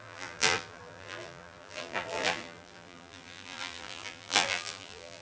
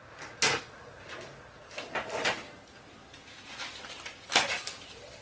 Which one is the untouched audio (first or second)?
second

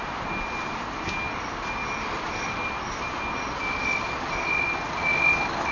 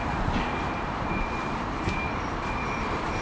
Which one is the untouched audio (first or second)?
first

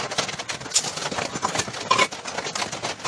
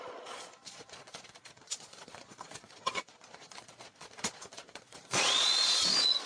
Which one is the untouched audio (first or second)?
first